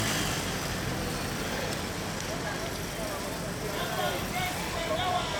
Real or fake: real